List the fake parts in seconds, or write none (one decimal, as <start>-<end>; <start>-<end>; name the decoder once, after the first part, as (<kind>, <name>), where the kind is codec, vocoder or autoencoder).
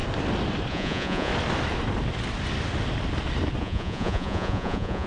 0.7-1.3 (vocoder, Vocos); 3.6-5.1